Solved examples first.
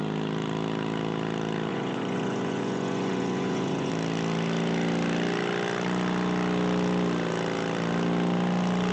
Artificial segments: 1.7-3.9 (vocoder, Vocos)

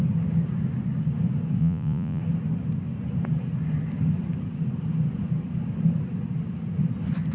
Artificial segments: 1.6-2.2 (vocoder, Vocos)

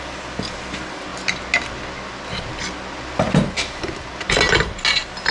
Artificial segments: none